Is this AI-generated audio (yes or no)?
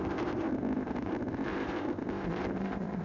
yes